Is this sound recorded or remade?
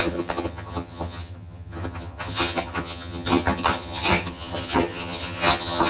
remade